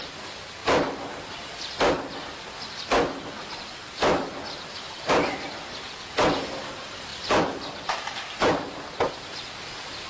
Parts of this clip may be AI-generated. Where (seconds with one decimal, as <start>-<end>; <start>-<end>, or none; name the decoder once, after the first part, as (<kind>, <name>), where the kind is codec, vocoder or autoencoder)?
none